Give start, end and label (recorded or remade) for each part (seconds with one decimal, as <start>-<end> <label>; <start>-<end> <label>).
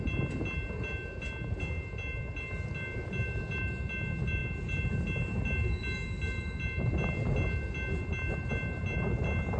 0.0-9.6 recorded